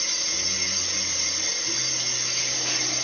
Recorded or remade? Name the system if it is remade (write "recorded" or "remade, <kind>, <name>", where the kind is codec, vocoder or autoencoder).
recorded